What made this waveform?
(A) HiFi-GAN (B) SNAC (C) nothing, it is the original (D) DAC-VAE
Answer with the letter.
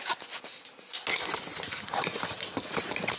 C